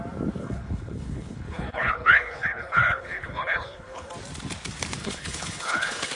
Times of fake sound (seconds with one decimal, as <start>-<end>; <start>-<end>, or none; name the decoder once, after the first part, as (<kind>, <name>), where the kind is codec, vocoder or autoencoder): 0.4-4.1 (codec, HILCodec); 5.0-6.1